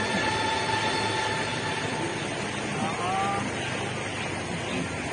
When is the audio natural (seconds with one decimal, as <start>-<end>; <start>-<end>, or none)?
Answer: 0.0-5.1